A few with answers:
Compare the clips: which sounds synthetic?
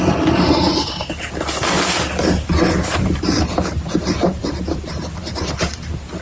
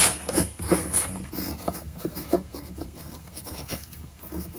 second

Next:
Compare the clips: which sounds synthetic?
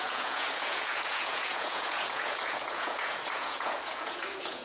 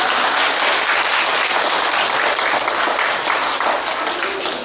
first